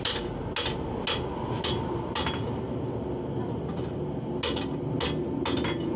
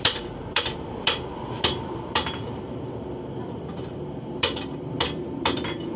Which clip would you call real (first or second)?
first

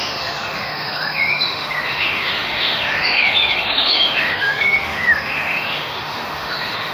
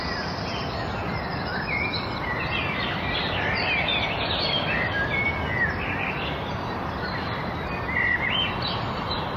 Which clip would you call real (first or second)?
second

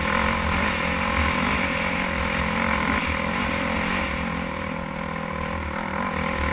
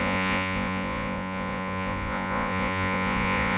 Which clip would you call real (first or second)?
first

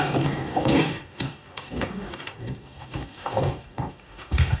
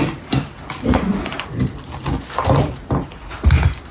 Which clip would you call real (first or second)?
second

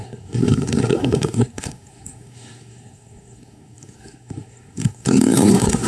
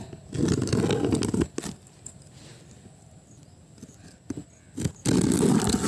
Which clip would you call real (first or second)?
second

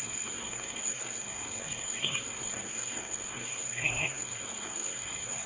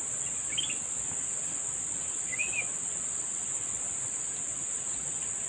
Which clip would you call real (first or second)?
second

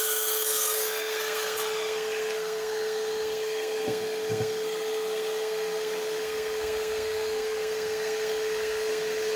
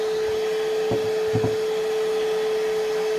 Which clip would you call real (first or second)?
second